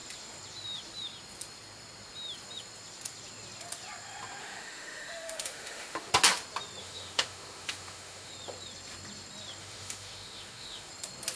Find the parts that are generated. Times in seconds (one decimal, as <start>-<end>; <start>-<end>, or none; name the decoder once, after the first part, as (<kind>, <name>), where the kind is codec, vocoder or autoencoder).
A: 4.4-6.1 (autoencoder, DAC-VAE); 6.8-8.3; 9.6-10.9